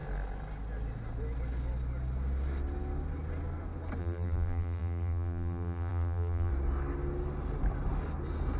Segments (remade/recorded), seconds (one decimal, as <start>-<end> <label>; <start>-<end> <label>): 0.0-4.0 recorded; 4.0-6.5 remade; 6.5-8.6 recorded